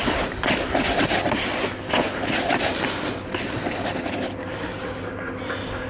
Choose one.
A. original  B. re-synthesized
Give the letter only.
A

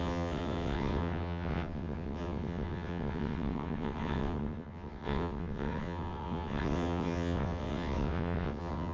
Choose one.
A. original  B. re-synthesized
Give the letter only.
B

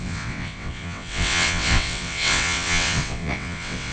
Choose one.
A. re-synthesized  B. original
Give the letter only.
A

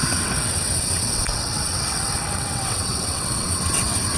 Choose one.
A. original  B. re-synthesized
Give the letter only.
B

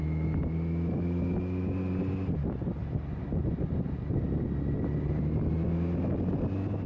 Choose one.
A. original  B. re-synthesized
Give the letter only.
A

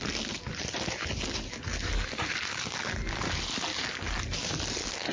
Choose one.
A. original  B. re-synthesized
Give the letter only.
A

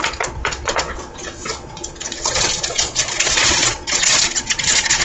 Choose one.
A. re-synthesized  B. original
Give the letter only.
A